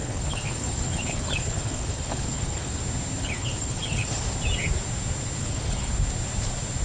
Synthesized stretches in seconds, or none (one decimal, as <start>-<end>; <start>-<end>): 0.0-2.8; 3.2-4.2; 5.4-5.9